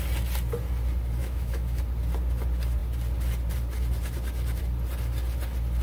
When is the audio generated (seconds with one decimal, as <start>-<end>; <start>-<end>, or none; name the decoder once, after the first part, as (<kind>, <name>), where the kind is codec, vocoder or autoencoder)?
1.2-1.8 (autoencoder, DAC-VAE)